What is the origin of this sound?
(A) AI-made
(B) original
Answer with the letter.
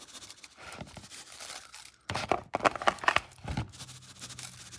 B